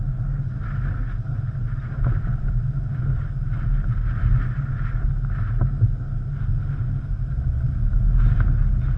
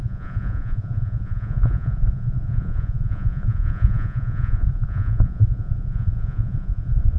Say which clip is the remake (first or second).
second